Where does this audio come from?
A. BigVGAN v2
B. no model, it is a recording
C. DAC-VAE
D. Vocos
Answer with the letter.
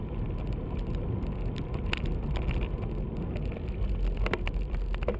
B